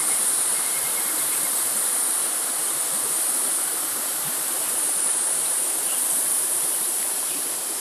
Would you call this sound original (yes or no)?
no